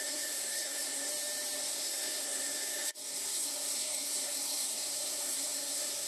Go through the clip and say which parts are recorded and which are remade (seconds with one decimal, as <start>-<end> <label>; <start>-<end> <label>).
0.0-1.1 remade; 1.1-1.6 recorded; 1.6-6.1 remade